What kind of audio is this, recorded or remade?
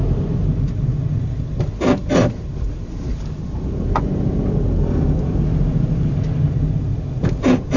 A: recorded